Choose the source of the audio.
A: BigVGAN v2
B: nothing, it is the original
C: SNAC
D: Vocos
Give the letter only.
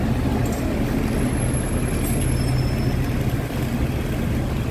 B